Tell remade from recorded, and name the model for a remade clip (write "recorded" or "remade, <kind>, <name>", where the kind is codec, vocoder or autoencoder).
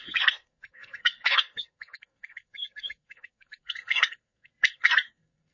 remade, codec, SNAC